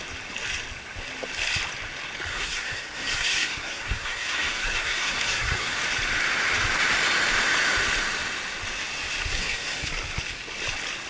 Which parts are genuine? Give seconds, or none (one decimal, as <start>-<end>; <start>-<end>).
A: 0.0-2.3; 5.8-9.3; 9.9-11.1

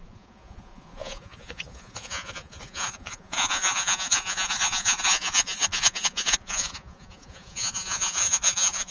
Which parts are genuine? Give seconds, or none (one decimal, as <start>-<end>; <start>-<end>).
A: none

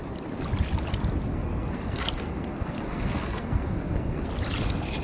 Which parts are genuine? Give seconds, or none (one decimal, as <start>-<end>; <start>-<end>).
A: 0.0-1.3; 4.3-5.0

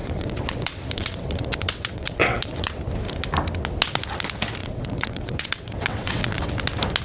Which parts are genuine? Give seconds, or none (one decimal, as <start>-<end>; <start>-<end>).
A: 2.7-4.6; 6.5-7.0

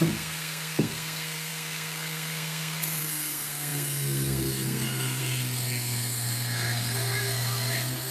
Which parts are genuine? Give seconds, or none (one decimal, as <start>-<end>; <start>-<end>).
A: none

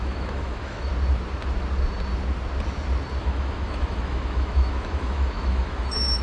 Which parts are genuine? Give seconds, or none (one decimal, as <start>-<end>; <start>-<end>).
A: 0.9-3.2